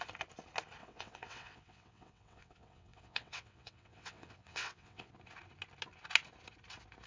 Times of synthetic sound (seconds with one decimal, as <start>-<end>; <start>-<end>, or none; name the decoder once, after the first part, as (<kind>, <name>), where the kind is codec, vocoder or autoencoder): 0.8-5.1 (vocoder, WaveNeXt)

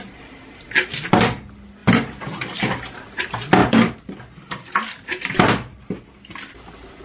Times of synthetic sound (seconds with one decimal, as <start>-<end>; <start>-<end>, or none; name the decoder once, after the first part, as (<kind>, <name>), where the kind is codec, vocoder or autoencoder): none

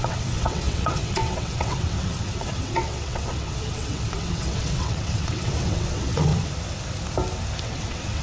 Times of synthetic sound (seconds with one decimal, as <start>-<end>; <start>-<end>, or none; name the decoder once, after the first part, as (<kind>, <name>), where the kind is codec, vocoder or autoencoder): 0.0-6.3 (vocoder, WaveNeXt); 7.6-8.2

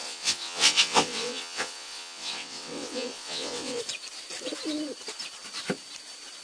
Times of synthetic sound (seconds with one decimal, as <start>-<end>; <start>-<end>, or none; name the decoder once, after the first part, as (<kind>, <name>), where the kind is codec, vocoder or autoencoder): 0.0-3.8 (vocoder, WaveNeXt)